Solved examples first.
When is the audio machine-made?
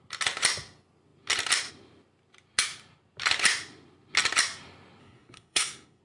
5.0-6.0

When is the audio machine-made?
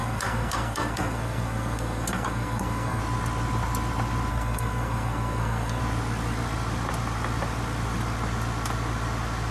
0.0-3.0; 4.3-5.8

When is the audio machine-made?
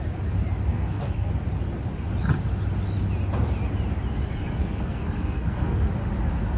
0.7-1.3; 4.6-5.9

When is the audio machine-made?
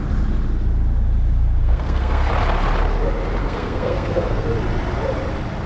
1.6-2.3; 3.4-4.5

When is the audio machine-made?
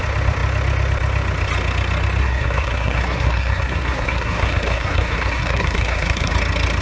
2.2-6.3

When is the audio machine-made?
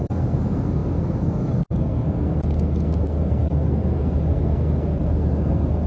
0.0-5.9